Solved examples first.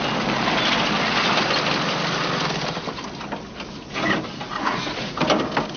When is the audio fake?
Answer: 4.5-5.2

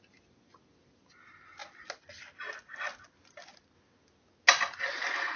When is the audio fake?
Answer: none